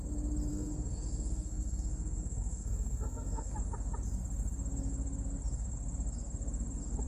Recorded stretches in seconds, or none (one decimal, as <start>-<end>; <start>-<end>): 0.0-0.5; 3.5-7.1